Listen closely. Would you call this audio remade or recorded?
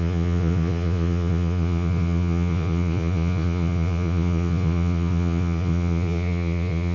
remade